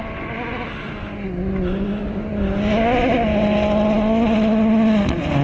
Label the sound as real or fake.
real